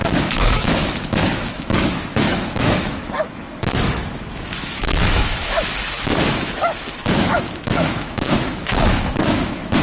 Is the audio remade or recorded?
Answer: remade